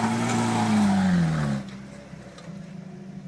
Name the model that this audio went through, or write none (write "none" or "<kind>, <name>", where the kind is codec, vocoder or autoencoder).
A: none